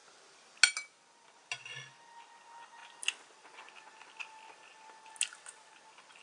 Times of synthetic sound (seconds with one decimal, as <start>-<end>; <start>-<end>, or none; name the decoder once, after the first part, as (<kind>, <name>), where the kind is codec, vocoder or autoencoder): none